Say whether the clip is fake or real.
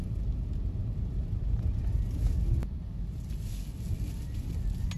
real